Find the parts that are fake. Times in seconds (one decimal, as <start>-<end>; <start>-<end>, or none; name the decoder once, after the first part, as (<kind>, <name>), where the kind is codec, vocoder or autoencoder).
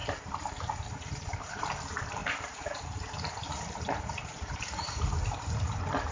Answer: 0.0-1.6 (vocoder, BigVGAN v2); 2.2-5.2